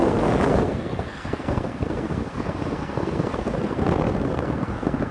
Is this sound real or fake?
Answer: fake